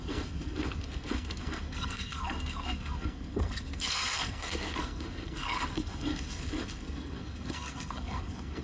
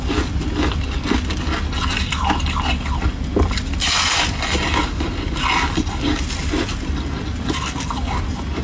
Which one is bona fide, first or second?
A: second